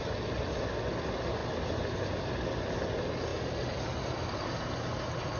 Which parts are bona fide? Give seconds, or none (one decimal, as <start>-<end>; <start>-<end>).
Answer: 0.0-3.3; 4.5-5.4